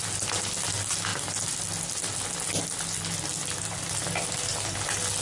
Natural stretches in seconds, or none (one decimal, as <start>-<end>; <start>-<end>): 0.0-5.2